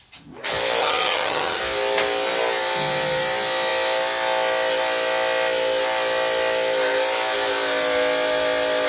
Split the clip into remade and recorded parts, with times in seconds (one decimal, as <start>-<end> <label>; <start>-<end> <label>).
0.0-0.8 recorded; 0.8-1.6 remade; 1.6-8.9 recorded